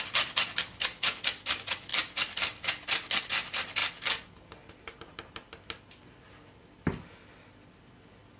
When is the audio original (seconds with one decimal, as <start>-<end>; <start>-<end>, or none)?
0.0-8.4